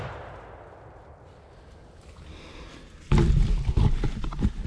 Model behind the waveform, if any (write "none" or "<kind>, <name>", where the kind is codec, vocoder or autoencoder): none